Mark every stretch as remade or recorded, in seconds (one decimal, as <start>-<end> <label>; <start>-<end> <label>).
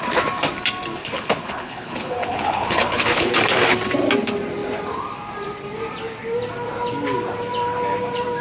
0.0-1.0 recorded; 1.0-3.3 remade; 3.3-8.4 recorded